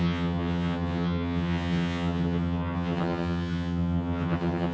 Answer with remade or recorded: remade